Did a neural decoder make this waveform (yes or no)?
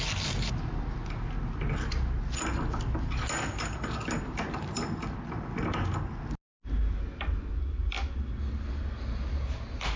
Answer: no